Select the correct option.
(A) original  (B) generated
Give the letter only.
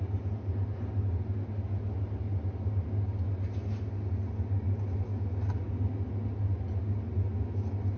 A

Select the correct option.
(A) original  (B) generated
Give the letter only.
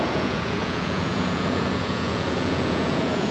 B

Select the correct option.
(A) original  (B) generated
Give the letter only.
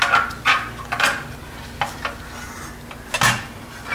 A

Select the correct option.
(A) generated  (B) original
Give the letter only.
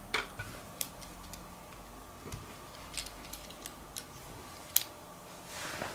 B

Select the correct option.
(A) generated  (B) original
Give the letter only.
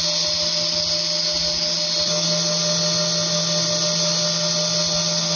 B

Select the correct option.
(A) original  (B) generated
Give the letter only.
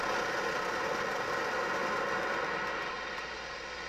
A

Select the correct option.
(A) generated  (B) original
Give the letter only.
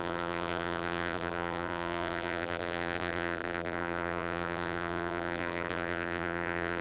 A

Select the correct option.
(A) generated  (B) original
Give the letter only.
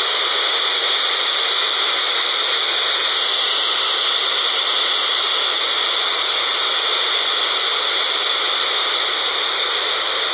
B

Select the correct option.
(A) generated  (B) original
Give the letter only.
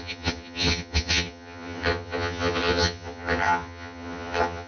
A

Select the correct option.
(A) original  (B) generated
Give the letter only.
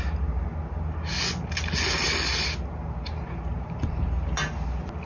A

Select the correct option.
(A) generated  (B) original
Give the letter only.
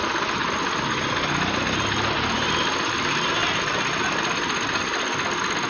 B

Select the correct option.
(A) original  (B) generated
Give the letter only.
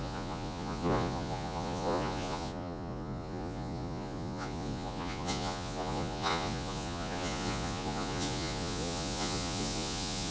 B